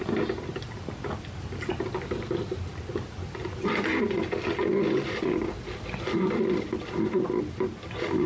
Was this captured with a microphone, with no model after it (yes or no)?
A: yes